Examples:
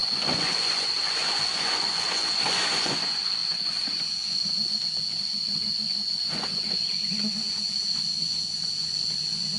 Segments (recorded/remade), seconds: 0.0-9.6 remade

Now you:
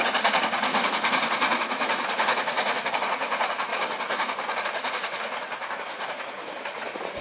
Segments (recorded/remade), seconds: 0.0-3.7 remade; 3.7-4.6 recorded; 4.6-7.2 remade

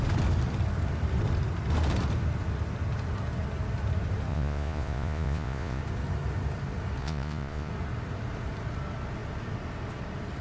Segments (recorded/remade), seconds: 0.0-4.3 recorded; 4.3-5.8 remade; 5.8-7.0 recorded; 7.0-7.7 remade; 7.7-10.4 recorded

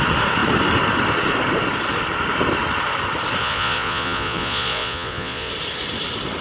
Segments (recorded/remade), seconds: 0.0-3.4 recorded; 3.4-5.5 remade; 5.5-6.4 recorded